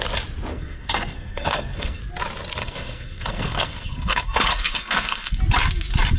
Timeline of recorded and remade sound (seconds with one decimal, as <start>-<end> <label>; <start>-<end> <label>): 0.0-0.5 recorded; 0.5-2.0 remade; 2.0-2.6 recorded; 2.6-5.4 remade; 5.4-6.2 recorded